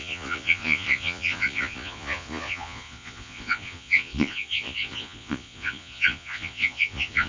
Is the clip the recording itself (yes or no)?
no